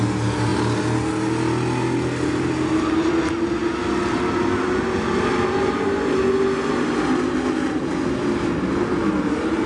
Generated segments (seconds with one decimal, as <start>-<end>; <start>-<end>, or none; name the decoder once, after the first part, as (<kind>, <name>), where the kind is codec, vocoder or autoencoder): none